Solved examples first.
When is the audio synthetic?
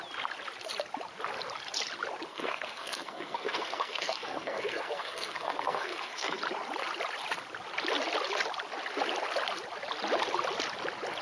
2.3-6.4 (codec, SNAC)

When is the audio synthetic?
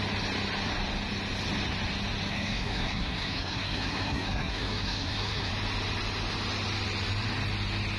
2.3-5.5 (codec, SNAC)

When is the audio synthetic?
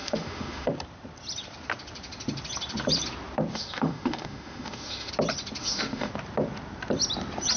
0.0-0.7 (autoencoder, DAC-VAE); 3.5-5.1; 5.6-6.1